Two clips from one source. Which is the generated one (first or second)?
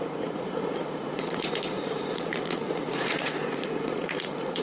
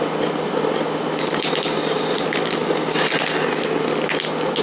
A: first